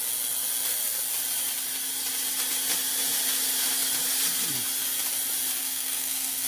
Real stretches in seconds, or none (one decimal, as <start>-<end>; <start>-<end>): 0.0-5.6